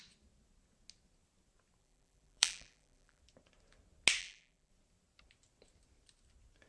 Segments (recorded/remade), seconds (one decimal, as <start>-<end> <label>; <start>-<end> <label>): 0.0-1.8 recorded; 1.8-3.2 remade; 3.2-4.2 recorded; 4.2-4.7 remade; 4.7-6.7 recorded